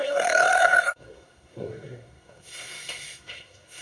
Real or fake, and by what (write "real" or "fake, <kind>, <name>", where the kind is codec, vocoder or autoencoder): fake, codec, SNAC